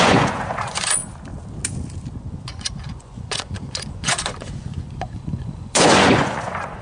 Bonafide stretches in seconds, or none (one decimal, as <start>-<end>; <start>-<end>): 1.0-2.3